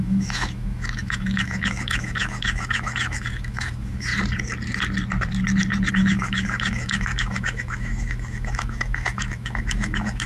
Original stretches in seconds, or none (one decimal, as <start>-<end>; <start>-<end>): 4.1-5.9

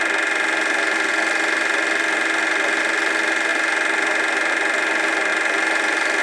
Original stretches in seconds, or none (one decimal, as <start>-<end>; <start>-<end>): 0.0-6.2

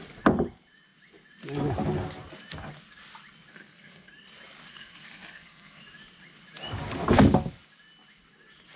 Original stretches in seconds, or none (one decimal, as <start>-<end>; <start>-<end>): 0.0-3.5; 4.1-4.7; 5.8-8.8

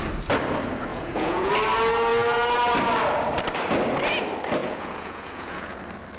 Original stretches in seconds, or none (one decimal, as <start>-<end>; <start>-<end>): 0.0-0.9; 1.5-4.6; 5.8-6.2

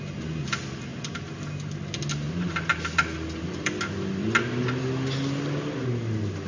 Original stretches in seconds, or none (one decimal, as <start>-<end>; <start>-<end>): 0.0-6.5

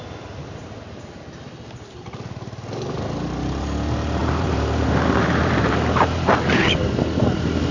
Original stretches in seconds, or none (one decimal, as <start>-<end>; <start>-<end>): 0.0-4.2; 6.3-7.7

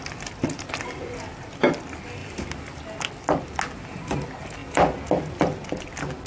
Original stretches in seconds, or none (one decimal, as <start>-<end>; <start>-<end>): 0.0-6.3